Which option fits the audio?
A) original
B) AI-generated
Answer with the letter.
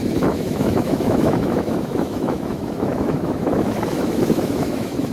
B